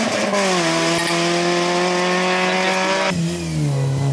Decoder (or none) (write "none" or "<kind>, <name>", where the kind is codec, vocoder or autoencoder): none